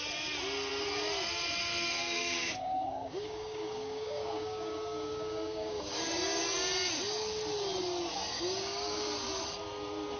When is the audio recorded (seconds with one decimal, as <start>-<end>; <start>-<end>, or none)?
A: 0.0-2.0; 6.4-8.1; 9.1-10.2